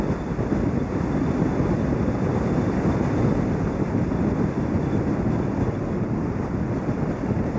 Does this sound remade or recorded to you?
recorded